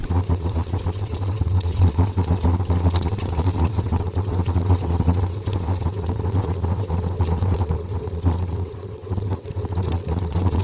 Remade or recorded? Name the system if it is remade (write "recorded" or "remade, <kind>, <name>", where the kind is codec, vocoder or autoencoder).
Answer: remade, vocoder, WaveNeXt